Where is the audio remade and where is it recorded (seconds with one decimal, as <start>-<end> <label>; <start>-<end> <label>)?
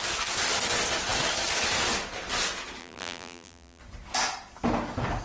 0.0-2.8 recorded; 2.8-3.8 remade; 3.8-5.2 recorded